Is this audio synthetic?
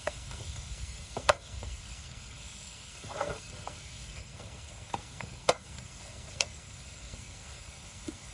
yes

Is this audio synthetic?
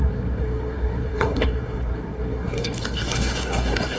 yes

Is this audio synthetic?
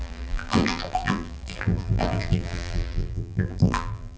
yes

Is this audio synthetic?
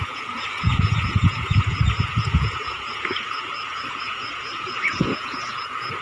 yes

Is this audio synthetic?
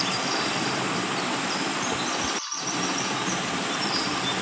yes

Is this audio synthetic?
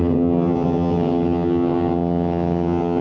yes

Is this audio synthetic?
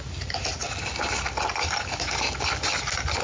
no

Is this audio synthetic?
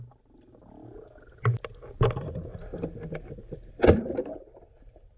no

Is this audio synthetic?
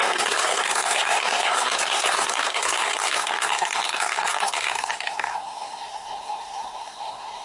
yes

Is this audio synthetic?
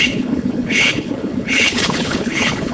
yes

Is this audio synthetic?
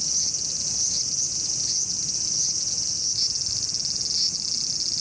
no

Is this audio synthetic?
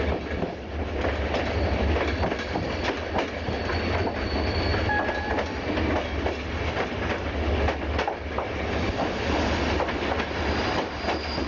no